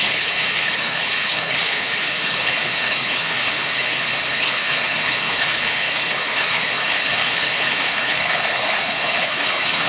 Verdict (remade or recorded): remade